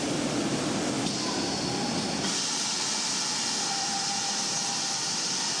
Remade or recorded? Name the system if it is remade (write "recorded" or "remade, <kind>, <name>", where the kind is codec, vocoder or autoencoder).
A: recorded